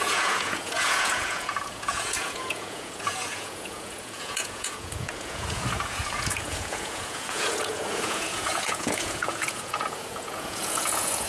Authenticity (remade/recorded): remade